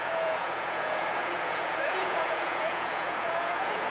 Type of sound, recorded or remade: remade